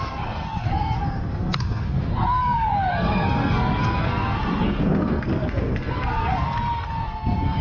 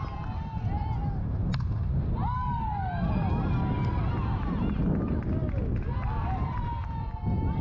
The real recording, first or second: second